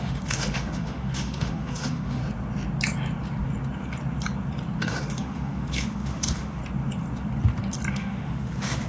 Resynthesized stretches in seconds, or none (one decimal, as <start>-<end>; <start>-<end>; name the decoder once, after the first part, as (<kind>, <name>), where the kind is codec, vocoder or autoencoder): 0.0-2.2 (autoencoder, DAC-VAE); 4.8-6.6; 7.9-8.9